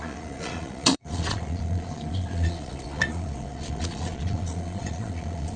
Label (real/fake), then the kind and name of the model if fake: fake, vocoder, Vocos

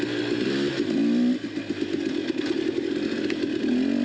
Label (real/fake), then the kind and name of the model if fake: real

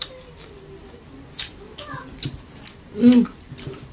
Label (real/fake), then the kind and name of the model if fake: real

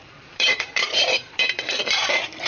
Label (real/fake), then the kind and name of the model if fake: fake, vocoder, BigVGAN v2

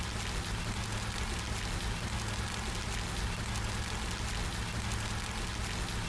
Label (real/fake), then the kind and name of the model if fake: real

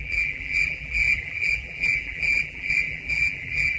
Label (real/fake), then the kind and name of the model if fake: fake, vocoder, BigVGAN v2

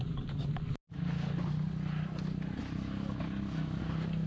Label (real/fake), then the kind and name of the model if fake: real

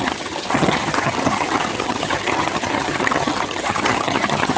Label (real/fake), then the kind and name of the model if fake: fake, vocoder, HiFi-GAN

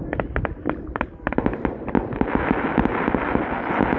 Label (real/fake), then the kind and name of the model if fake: real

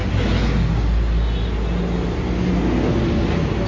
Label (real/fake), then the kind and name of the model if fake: real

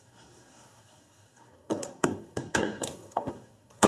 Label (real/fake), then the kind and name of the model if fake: fake, codec, SNAC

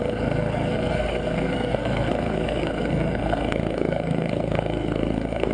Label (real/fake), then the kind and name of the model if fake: fake, codec, SNAC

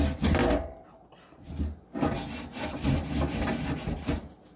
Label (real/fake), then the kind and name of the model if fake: real